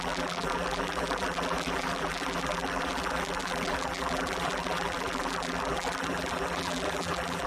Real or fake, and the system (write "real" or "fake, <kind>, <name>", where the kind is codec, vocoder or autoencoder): fake, vocoder, BigVGAN v2